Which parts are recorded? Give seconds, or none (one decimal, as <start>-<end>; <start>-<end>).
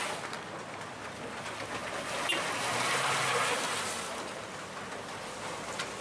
0.0-6.0